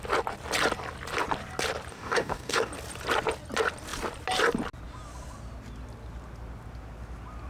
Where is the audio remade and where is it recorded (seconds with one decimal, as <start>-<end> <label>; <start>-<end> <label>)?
0.0-1.9 recorded; 1.9-2.7 remade; 2.7-7.5 recorded